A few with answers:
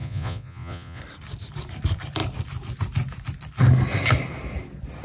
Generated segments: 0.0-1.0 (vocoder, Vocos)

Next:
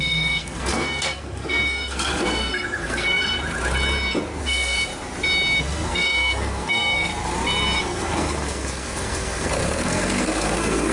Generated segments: 0.0-3.4 (codec, SNAC); 4.4-4.9; 5.6-7.1; 7.8-10.9

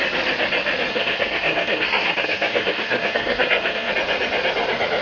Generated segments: 0.9-3.9 (codec, SNAC)

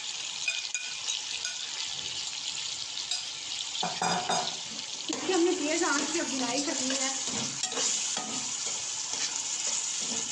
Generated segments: 6.1-6.7 (codec, DAC)

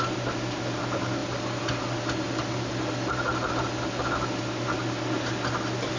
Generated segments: 1.2-4.4 (vocoder, BigVGAN v2)

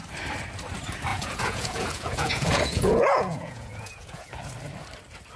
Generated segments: 1.1-4.3 (vocoder, Vocos)